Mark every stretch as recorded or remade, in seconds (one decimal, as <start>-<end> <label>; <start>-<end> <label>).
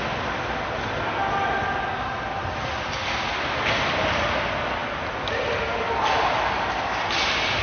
0.0-7.6 recorded